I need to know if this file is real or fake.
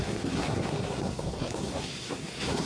fake